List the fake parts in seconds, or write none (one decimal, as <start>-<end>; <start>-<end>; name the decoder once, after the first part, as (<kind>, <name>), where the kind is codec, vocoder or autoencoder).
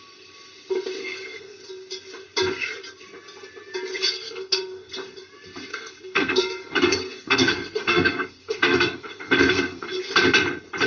1.0-1.6 (codec, SNAC); 4.1-4.9; 5.7-10.0